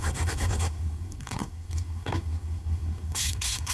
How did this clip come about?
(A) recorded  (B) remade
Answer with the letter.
B